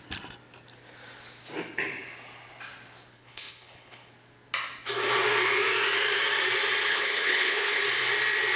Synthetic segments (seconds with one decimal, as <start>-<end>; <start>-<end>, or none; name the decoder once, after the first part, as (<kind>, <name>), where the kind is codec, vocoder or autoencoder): 3.1-4.1 (codec, HILCodec); 6.9-7.8